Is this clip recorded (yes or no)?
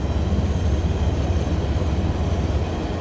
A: yes